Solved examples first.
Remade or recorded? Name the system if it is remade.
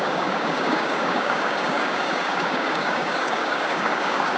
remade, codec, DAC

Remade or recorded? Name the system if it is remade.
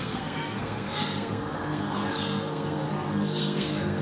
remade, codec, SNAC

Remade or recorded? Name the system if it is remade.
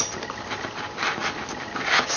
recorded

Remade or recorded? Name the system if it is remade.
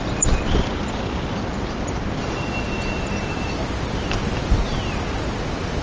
recorded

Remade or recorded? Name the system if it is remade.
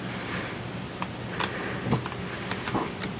recorded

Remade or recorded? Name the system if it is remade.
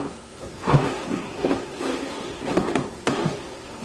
remade, codec, SNAC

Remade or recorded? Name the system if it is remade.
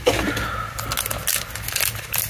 recorded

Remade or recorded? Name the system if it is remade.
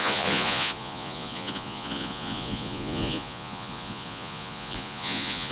remade, vocoder, Vocos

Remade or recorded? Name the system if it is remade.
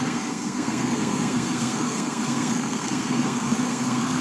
remade, codec, SNAC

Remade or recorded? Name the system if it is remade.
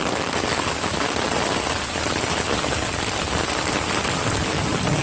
recorded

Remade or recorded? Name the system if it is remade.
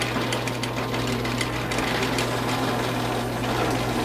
recorded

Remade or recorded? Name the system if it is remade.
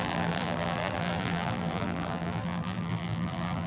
remade, vocoder, BigVGAN v2